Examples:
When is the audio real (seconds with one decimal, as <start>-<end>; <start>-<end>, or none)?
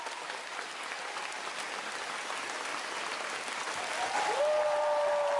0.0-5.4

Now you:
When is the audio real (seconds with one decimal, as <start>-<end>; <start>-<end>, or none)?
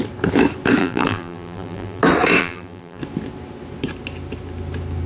0.0-0.8; 2.0-2.4; 3.0-5.1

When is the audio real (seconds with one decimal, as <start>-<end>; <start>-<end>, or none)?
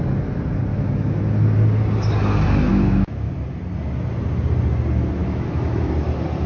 0.0-0.7; 1.2-2.7; 3.3-5.2; 5.9-6.5